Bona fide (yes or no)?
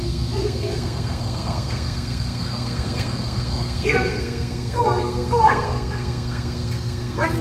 no